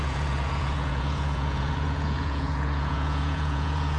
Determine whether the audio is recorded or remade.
remade